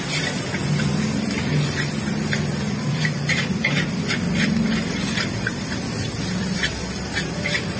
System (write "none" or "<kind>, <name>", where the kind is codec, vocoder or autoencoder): vocoder, BigVGAN v2